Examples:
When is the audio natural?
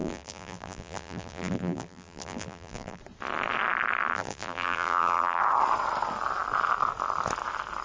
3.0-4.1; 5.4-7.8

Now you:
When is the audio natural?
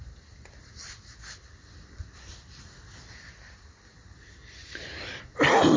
0.0-4.6; 5.2-5.8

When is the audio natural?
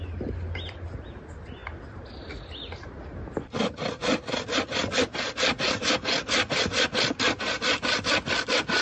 0.0-8.8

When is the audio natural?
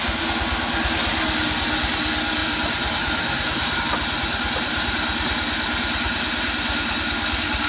0.0-2.4; 3.8-7.7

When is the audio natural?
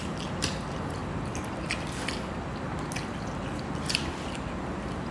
0.0-5.1